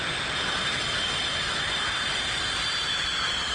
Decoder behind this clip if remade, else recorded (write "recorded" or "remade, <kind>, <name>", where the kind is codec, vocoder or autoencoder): recorded